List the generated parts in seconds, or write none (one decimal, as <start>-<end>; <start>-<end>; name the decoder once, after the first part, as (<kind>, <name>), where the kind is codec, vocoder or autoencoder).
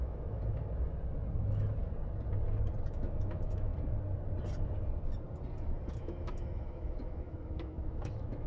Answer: 0.0-0.6 (autoencoder, DAC-VAE); 2.9-3.7; 5.9-8.5